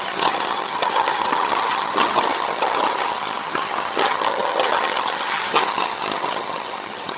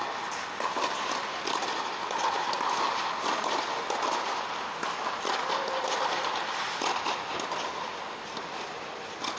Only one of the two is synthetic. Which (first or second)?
first